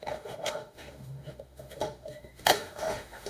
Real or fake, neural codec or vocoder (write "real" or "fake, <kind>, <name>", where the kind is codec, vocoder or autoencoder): fake, autoencoder, DAC-VAE